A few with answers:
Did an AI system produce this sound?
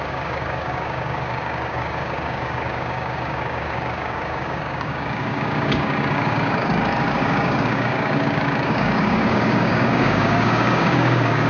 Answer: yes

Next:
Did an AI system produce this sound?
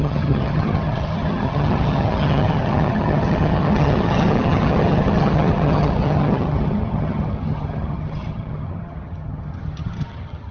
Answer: yes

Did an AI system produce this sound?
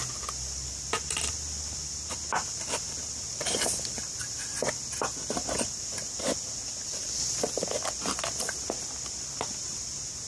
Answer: no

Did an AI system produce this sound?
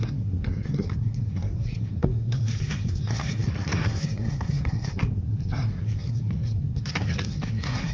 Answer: yes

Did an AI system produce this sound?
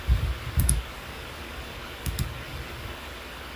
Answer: yes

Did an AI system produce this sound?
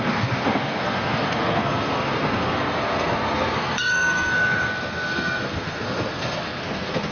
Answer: yes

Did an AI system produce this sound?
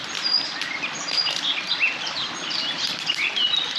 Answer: yes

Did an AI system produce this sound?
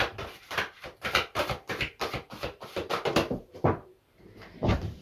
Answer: yes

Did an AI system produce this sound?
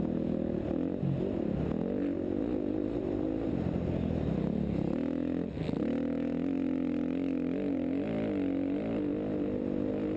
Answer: no